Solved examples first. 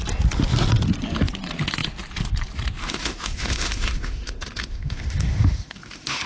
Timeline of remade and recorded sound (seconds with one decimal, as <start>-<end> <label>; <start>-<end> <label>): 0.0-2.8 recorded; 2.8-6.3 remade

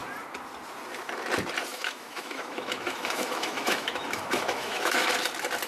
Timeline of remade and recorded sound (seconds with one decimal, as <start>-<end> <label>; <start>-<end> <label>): 0.0-1.7 recorded; 1.7-5.1 remade; 5.1-5.7 recorded

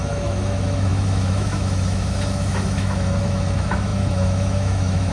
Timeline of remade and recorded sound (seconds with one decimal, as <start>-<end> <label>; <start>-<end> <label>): 0.0-5.1 remade